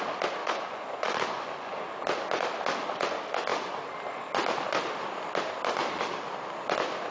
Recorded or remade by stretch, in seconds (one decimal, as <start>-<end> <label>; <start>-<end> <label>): 0.0-0.4 recorded; 0.4-1.7 remade; 1.7-7.1 recorded

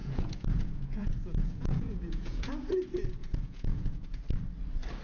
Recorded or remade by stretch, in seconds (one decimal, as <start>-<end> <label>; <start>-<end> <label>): 0.0-2.5 remade; 2.5-3.2 recorded; 3.2-4.2 remade; 4.2-5.0 recorded

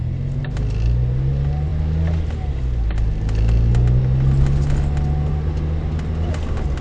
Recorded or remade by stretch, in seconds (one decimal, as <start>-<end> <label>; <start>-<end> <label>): 0.0-6.8 recorded

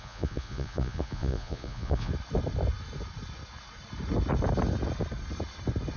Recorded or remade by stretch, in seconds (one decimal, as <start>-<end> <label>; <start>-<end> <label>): 0.0-2.1 remade; 2.1-6.0 recorded

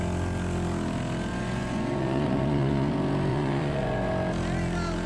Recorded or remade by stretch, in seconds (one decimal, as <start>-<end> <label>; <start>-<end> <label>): 0.0-1.3 recorded; 1.3-2.9 remade; 2.9-3.3 recorded; 3.3-4.1 remade; 4.1-5.1 recorded

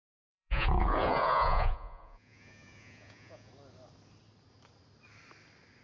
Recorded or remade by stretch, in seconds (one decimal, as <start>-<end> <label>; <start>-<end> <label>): 0.0-3.5 remade; 3.5-5.8 recorded